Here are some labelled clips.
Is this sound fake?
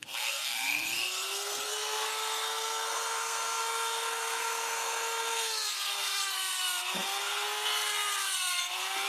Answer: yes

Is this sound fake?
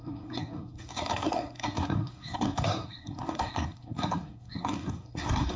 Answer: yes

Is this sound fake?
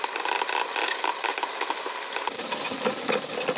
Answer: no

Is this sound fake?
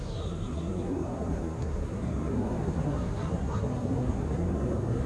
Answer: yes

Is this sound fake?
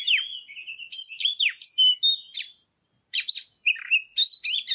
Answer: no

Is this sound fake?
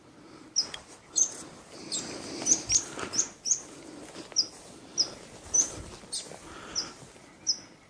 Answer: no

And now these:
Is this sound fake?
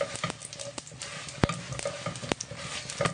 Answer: no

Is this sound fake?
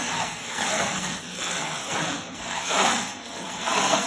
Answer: yes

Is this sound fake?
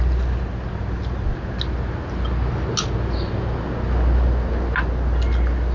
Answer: no